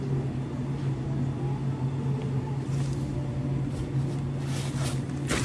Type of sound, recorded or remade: recorded